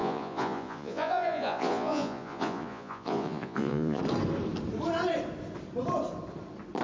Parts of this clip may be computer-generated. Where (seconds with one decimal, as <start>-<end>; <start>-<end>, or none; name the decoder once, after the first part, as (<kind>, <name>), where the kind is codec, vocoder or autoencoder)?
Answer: 0.0-4.0 (vocoder, Vocos)